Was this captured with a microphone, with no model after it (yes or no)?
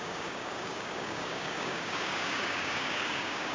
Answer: no